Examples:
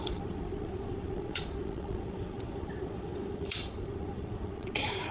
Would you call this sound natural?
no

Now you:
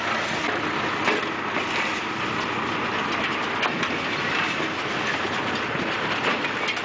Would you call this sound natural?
yes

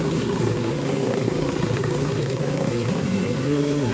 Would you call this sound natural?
no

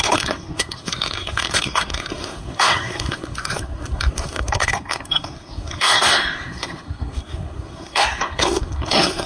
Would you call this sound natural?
no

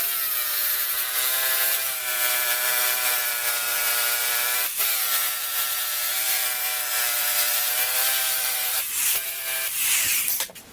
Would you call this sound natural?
no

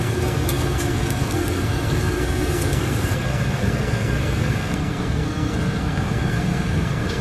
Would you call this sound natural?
no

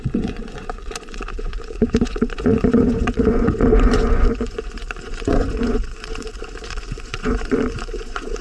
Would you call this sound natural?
no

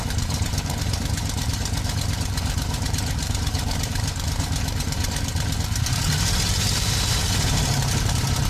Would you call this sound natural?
no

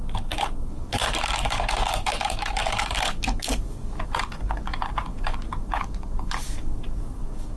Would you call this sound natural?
no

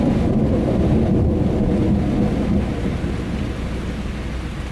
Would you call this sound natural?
yes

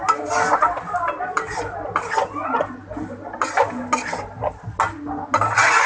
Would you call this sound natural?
yes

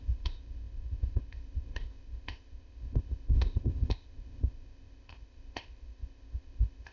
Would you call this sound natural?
no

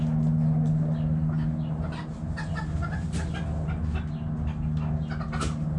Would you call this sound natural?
yes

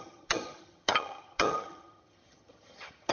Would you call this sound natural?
no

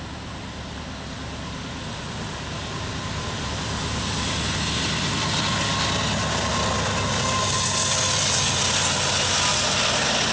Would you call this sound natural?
yes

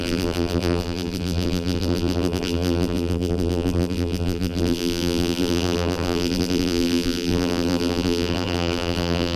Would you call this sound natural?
no